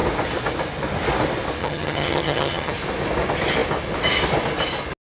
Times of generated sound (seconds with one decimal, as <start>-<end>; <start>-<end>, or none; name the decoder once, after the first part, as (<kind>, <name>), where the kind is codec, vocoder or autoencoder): 1.6-2.7 (vocoder, HiFi-GAN)